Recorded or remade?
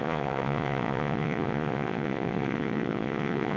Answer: remade